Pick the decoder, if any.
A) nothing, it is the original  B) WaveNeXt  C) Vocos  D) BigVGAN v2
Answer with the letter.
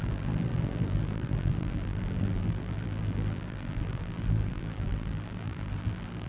D